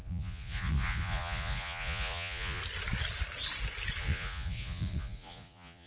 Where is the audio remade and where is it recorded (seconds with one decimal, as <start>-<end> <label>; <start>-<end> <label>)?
0.0-2.6 remade; 2.6-4.0 recorded; 4.0-5.9 remade

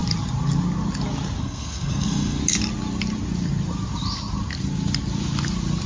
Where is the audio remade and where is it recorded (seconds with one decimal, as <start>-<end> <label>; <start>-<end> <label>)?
0.0-1.4 recorded; 1.4-2.4 remade; 2.4-5.9 recorded

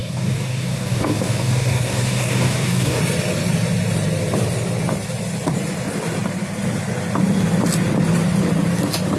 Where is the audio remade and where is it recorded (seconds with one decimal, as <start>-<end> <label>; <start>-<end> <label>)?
0.0-3.0 remade; 3.0-9.2 recorded